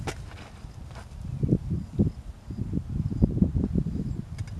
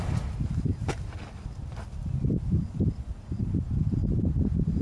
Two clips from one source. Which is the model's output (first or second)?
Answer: second